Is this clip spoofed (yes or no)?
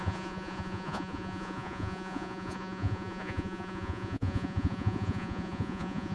yes